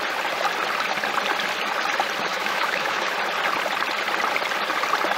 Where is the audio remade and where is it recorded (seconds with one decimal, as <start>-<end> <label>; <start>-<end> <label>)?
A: 0.0-2.3 recorded; 2.3-3.1 remade; 3.1-5.2 recorded